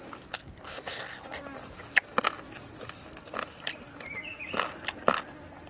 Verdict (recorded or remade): recorded